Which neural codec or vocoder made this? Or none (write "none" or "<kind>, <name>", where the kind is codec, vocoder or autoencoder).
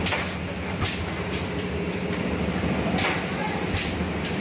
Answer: none